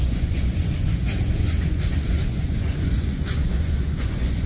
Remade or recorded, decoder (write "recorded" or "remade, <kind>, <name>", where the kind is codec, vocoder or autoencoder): remade, vocoder, Vocos